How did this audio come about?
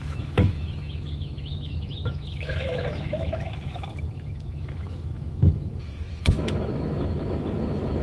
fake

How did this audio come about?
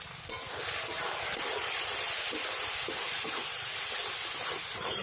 real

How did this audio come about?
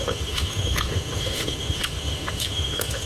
fake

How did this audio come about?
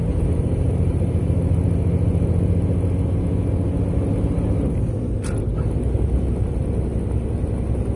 real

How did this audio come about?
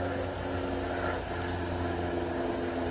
real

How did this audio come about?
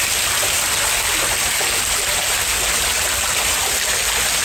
real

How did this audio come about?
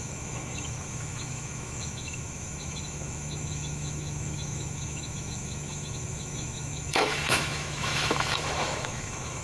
fake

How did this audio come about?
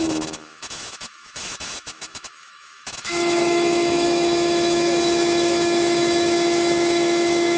fake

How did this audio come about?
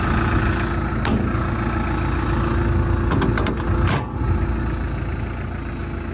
real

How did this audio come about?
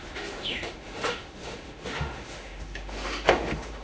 fake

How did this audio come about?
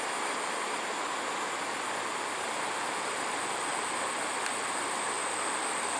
real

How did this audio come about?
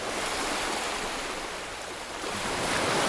real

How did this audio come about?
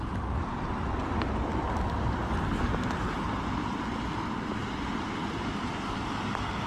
real